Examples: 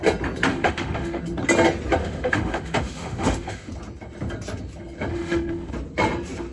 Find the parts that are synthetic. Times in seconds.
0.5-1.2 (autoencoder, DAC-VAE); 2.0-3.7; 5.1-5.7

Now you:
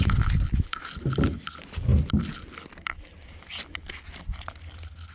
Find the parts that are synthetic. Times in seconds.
none

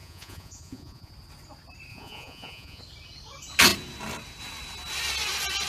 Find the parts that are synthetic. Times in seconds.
0.0-1.1 (vocoder, Vocos); 1.9-2.8

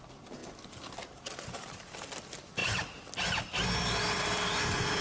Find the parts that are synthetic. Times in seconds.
none

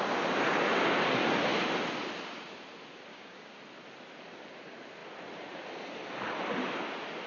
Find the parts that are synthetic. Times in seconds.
3.1-3.6 (codec, DAC)

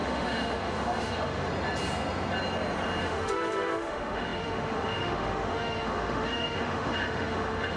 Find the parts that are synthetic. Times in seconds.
0.0-1.5 (autoencoder, DAC-VAE); 3.0-7.8

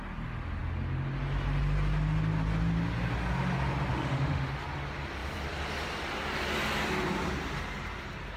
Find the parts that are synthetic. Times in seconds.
3.9-4.5 (autoencoder, DAC-VAE)

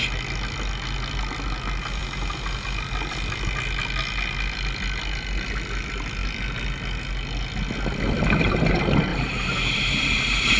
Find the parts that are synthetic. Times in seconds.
9.1-10.6 (vocoder, BigVGAN v2)